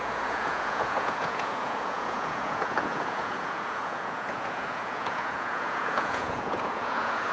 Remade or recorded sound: remade